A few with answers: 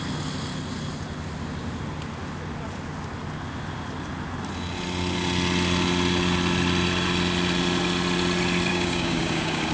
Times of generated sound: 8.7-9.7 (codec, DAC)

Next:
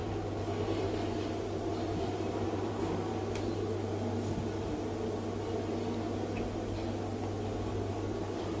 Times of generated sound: 2.7-3.1 (codec, DAC); 7.7-8.6

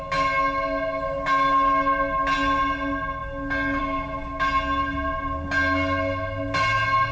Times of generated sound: none

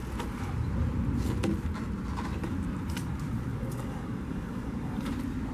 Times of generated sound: 3.5-5.1 (codec, DAC)